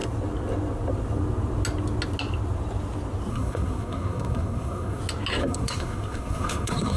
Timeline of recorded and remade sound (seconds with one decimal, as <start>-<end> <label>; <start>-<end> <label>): 0.0-3.3 recorded; 3.3-5.0 remade; 5.0-5.4 recorded; 5.4-7.0 remade